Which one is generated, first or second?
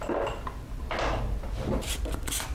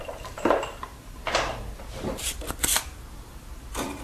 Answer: second